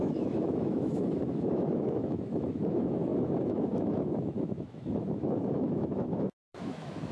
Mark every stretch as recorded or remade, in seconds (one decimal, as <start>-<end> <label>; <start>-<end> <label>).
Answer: 0.0-7.1 remade